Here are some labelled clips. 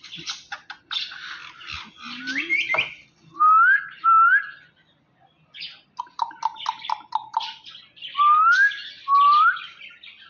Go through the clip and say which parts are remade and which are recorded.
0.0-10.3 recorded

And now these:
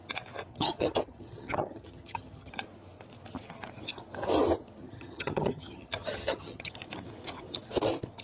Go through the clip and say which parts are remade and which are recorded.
0.0-0.5 recorded; 0.5-2.5 remade; 2.5-4.8 recorded; 4.8-6.7 remade; 6.7-8.2 recorded

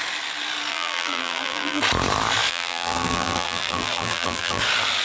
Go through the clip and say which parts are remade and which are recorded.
0.0-0.7 recorded; 0.7-1.8 remade; 1.8-2.5 recorded; 2.5-4.6 remade; 4.6-5.0 recorded

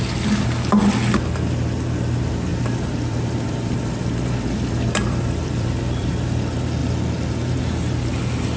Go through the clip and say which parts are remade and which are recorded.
0.0-2.5 recorded; 2.5-6.1 remade; 6.1-6.8 recorded; 6.8-7.6 remade; 7.6-8.6 recorded